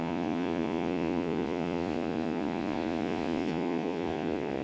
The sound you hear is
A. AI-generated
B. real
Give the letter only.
A